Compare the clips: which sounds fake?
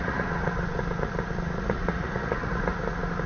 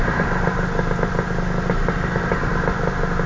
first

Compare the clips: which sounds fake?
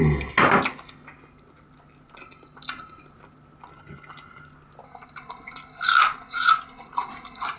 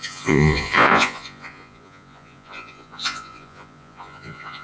second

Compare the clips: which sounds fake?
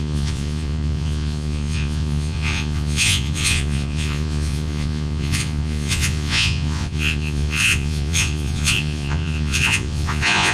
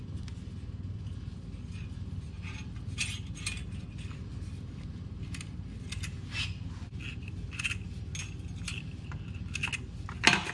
first